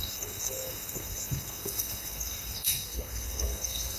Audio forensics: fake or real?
fake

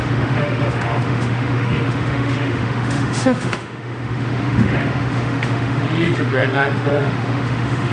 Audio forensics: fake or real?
fake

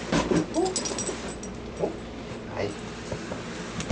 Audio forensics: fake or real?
real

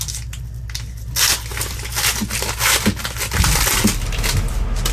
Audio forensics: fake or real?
real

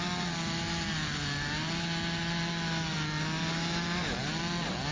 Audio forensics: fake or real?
real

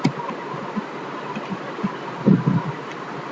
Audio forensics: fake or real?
real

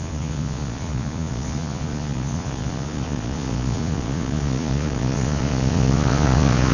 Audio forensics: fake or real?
fake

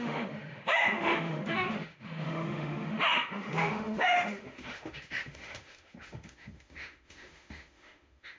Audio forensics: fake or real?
fake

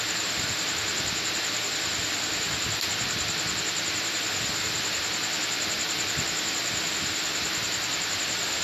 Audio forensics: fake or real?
real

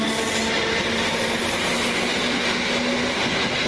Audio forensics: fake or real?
real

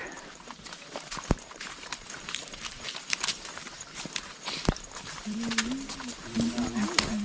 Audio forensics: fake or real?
fake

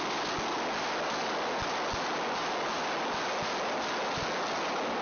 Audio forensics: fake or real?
real